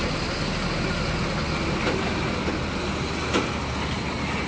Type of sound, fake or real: real